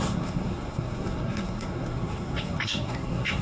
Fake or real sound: fake